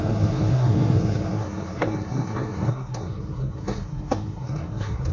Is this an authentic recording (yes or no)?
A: no